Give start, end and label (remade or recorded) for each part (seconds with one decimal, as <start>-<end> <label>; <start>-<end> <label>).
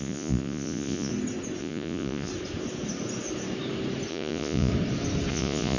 0.0-1.1 remade; 1.1-1.6 recorded; 1.6-2.3 remade; 2.3-4.1 recorded; 4.1-4.7 remade; 4.7-5.3 recorded; 5.3-5.8 remade